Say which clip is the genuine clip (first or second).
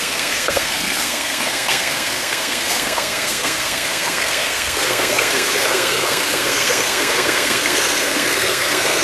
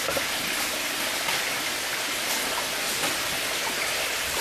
second